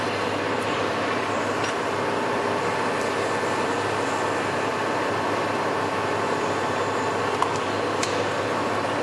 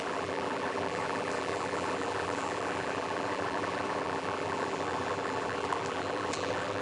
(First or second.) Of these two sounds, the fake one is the second